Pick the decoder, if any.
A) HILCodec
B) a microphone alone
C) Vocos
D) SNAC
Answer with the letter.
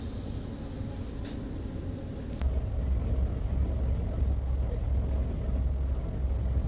B